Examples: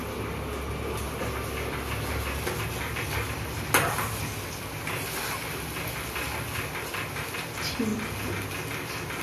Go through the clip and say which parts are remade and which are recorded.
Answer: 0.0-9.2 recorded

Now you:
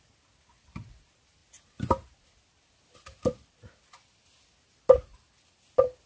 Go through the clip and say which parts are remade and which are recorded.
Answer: 0.0-6.1 recorded